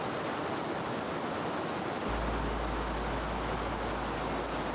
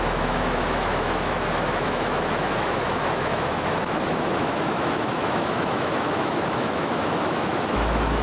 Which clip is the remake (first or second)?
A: second